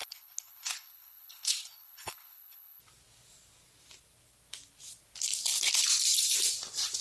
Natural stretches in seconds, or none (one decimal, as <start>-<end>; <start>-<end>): 2.8-7.0